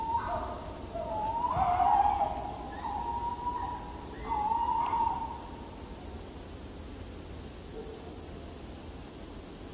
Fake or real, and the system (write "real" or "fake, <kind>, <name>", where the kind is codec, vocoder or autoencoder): real